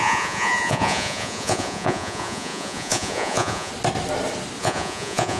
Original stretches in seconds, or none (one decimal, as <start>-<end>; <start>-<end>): 3.7-4.6